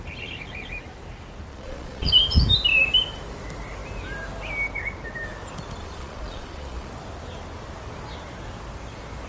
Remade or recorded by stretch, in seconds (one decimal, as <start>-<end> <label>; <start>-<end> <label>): 0.0-1.5 recorded; 1.5-2.1 remade; 2.1-5.8 recorded; 5.8-6.9 remade; 6.9-9.3 recorded